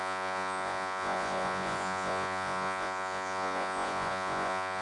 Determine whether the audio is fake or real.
fake